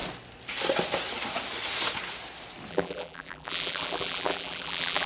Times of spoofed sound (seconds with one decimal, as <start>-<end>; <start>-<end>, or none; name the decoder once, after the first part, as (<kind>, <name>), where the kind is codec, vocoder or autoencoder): 2.7-5.1 (vocoder, BigVGAN v2)